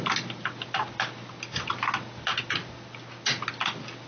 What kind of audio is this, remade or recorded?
recorded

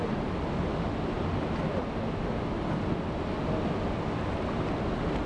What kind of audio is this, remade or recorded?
recorded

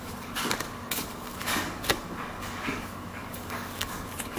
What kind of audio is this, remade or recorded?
remade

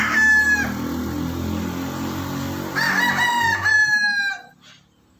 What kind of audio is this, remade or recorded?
recorded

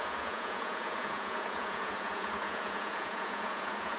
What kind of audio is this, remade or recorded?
remade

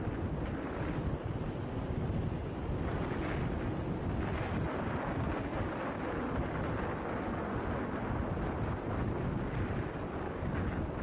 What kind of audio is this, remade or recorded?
recorded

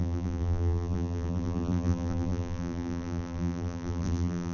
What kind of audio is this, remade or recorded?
remade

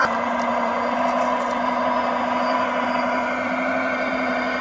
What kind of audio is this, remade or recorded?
recorded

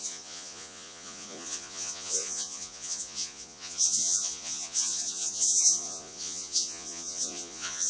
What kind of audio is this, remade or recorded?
remade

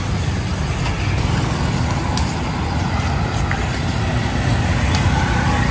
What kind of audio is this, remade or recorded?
recorded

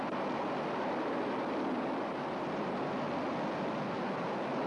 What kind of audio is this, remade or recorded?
recorded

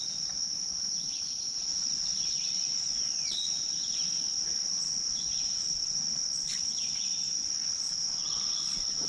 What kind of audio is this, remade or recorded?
remade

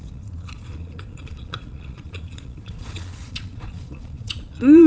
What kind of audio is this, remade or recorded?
remade